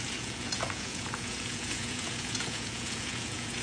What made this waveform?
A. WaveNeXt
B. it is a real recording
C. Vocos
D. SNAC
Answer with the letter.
C